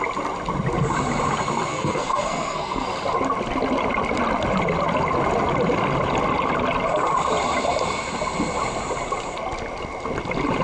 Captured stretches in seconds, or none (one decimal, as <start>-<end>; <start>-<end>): 0.0-1.7; 2.9-10.6